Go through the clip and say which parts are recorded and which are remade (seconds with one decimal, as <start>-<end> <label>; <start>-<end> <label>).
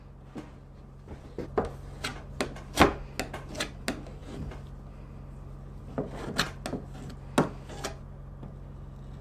0.0-9.2 recorded